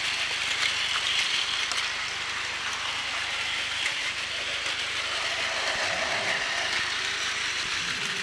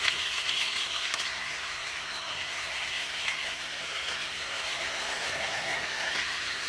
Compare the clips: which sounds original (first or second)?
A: first